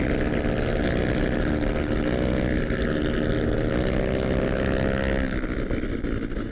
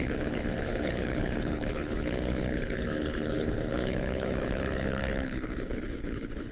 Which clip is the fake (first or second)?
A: second